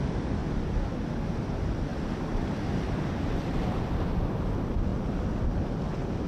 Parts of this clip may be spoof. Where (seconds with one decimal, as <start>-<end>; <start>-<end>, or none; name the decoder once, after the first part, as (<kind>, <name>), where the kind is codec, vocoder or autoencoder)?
none